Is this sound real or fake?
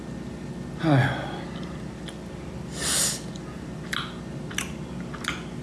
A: real